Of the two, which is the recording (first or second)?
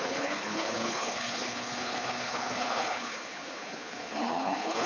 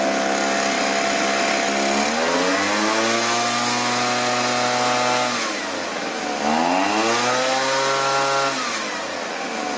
second